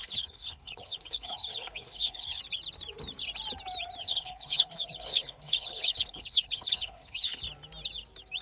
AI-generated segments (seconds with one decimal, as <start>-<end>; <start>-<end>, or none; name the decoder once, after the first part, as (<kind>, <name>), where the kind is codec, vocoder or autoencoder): 0.0-2.4 (codec, HILCodec); 4.0-7.4